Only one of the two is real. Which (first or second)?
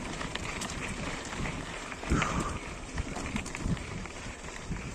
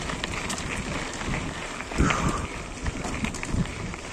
second